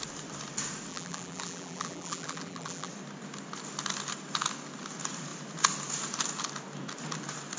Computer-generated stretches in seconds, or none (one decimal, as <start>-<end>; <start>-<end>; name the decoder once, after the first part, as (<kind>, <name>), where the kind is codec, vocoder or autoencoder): 0.9-2.9 (vocoder, BigVGAN v2)

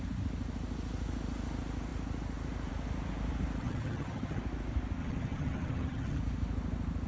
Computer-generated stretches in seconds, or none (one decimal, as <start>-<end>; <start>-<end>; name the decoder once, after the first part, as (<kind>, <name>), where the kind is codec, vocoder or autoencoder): 3.6-4.4 (vocoder, HiFi-GAN); 5.0-6.2

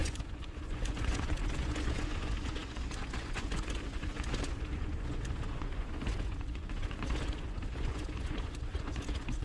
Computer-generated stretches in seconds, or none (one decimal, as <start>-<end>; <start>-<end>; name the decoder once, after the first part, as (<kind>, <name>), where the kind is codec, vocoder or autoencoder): 0.0-9.4 (vocoder, Vocos)

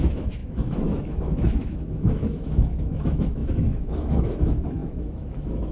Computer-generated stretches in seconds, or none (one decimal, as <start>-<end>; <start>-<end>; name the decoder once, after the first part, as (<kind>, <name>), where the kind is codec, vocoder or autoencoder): 0.0-5.7 (autoencoder, DAC-VAE)